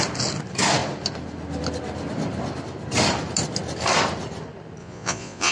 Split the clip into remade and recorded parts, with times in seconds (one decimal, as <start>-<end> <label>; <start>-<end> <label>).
0.0-4.8 recorded; 4.8-5.5 remade